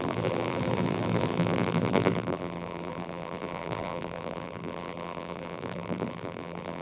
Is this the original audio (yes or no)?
no